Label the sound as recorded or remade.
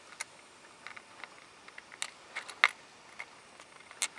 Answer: recorded